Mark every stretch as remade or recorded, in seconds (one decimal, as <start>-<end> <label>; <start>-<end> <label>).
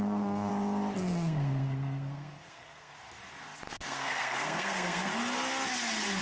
0.0-0.5 remade; 0.5-1.0 recorded; 1.0-2.9 remade; 2.9-3.7 recorded; 3.7-5.1 remade; 5.1-6.2 recorded